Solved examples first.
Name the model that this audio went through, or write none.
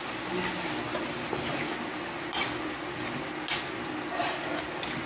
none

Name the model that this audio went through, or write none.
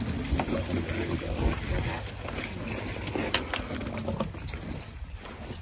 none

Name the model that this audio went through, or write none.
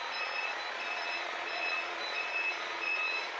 vocoder, Vocos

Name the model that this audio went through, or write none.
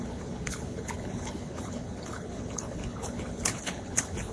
codec, HILCodec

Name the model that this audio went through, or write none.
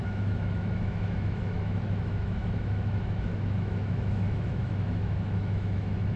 autoencoder, DAC-VAE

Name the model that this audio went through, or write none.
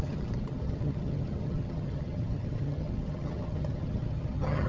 vocoder, HiFi-GAN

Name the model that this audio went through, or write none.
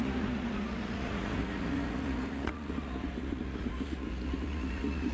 vocoder, Vocos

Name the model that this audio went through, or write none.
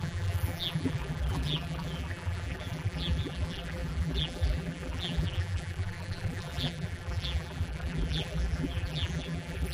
vocoder, BigVGAN v2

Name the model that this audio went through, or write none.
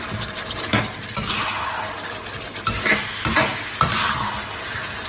none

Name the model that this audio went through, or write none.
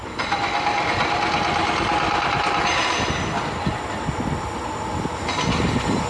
none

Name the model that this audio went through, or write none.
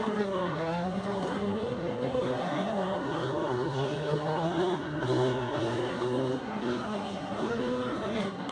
codec, SNAC